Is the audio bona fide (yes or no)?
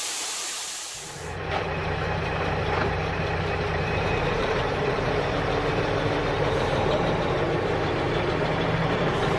no